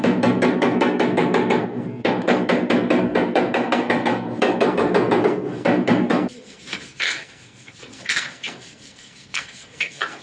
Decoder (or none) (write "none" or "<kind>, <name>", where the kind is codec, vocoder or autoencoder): codec, SNAC